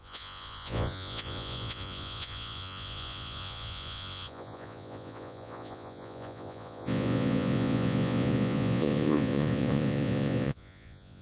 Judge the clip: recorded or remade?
remade